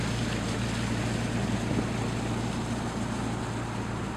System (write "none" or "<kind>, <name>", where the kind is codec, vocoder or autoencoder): none